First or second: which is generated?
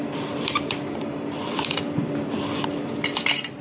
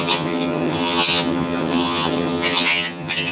second